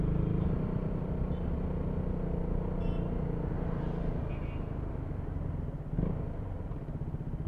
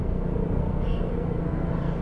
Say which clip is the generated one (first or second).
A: second